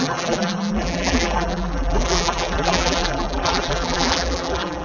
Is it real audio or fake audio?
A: fake